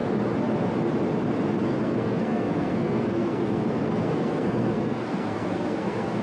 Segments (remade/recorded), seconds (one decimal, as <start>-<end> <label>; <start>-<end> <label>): 0.0-1.6 recorded; 1.6-6.2 remade